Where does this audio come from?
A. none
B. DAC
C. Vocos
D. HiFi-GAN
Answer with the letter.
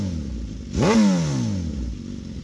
A